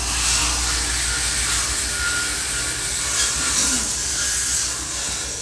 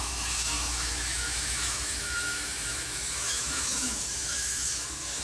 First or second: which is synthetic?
second